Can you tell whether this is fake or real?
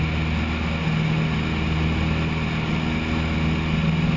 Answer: real